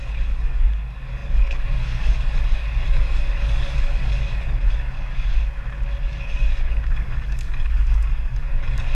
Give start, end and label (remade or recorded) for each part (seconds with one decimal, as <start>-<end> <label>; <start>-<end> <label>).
0.0-5.3 remade; 5.3-6.0 recorded; 6.0-8.9 remade